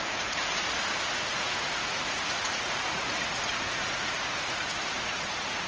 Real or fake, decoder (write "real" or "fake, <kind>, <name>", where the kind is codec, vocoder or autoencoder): fake, vocoder, Vocos